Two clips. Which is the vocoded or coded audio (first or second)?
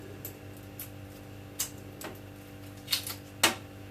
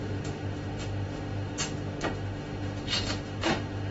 second